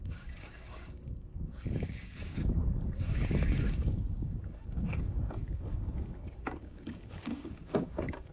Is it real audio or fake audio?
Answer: fake